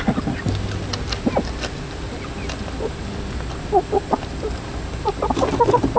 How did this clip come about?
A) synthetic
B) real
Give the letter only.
B